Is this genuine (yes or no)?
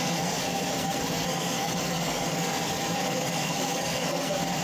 no